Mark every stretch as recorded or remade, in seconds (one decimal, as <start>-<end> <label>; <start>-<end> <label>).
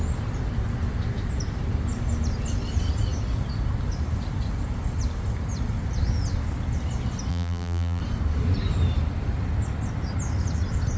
0.0-7.3 recorded; 7.3-8.0 remade; 8.0-11.0 recorded